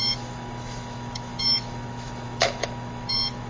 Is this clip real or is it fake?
fake